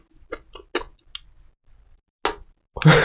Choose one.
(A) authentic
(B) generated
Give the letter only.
A